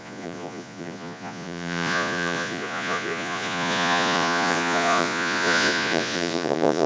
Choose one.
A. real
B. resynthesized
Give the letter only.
B